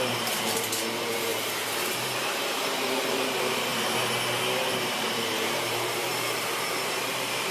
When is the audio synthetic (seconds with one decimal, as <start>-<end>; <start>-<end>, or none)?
0.0-3.7; 4.8-7.5